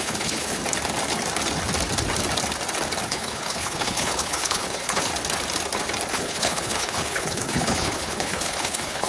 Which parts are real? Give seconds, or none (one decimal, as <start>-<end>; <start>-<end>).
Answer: 0.6-3.0; 5.1-6.1